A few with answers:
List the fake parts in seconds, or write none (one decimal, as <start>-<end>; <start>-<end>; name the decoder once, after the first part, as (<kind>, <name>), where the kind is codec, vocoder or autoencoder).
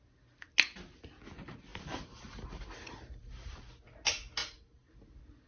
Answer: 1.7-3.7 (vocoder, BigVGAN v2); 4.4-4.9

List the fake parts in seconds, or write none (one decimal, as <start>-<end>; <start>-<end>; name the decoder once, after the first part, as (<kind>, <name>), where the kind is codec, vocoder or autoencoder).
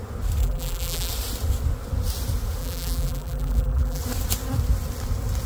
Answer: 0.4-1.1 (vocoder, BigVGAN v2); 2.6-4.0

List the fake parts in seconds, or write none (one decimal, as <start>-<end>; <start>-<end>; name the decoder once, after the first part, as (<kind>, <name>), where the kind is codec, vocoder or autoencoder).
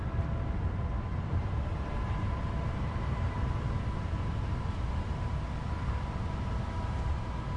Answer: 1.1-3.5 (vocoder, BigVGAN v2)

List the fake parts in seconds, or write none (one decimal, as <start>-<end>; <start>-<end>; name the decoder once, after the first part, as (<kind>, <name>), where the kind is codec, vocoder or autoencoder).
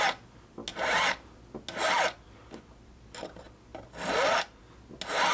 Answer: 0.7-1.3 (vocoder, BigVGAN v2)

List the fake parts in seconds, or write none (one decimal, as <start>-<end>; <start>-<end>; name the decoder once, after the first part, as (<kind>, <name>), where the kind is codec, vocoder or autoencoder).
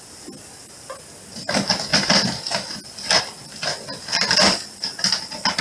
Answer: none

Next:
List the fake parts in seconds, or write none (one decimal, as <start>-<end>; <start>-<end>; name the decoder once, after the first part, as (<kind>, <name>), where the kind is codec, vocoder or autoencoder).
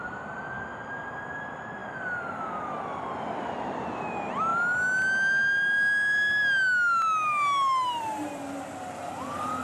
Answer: 1.8-4.0 (vocoder, BigVGAN v2)